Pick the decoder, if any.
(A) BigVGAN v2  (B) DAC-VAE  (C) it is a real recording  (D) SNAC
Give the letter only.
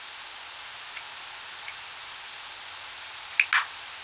C